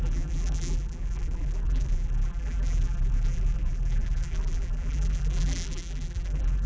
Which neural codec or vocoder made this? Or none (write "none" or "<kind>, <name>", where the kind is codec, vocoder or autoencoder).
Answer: vocoder, BigVGAN v2